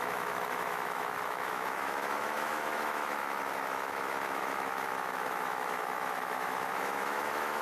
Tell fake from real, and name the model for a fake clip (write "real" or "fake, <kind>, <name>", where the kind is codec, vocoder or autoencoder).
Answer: fake, autoencoder, DAC-VAE